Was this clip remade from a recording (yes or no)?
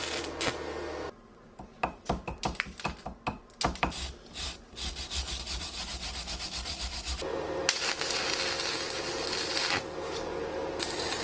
no